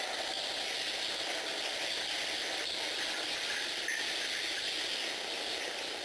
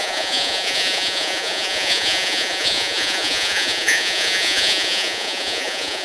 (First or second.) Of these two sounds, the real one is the first